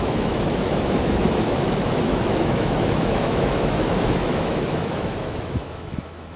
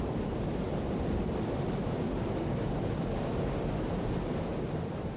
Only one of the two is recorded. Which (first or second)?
second